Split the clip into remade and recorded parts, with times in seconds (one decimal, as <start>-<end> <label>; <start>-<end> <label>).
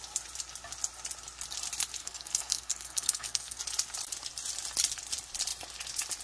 0.0-2.0 recorded; 2.0-3.6 remade; 3.6-6.2 recorded